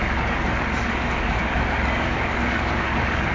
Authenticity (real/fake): fake